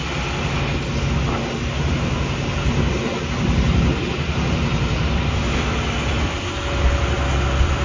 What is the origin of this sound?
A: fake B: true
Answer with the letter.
B